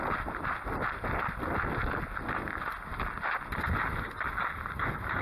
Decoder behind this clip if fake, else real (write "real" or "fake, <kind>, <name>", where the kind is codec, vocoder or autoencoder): real